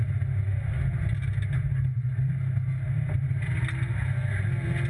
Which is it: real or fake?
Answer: real